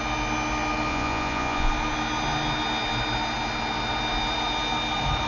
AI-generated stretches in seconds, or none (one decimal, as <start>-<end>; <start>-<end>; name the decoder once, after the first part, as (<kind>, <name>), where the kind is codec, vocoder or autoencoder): 0.9-1.7 (vocoder, Vocos)